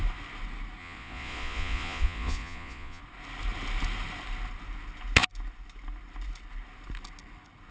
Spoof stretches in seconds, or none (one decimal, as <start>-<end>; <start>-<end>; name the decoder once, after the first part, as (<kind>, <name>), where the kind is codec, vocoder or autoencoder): 0.8-3.0 (vocoder, Vocos)